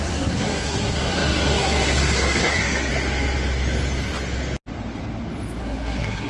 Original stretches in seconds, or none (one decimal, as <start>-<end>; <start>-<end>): 2.9-5.6